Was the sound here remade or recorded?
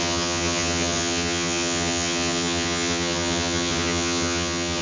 remade